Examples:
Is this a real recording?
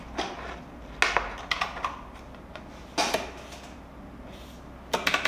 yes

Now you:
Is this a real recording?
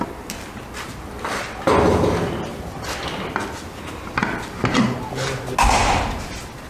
yes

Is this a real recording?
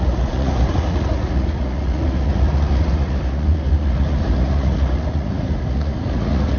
no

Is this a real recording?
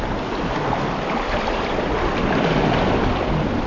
yes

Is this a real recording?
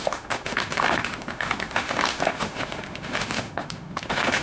no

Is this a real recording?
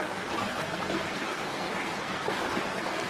no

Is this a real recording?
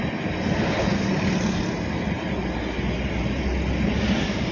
yes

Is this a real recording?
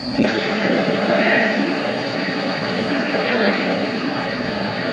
no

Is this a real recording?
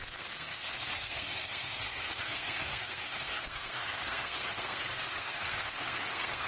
no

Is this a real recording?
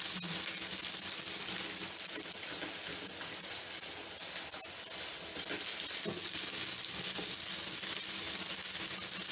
yes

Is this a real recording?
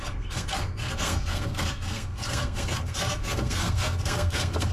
no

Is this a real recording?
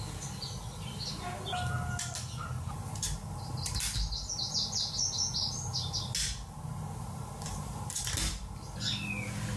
yes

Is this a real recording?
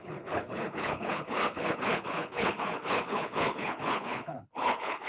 no